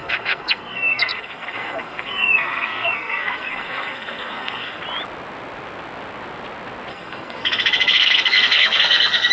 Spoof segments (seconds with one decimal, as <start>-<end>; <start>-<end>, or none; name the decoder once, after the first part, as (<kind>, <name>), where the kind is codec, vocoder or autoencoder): 0.0-4.8 (codec, SNAC); 6.9-9.3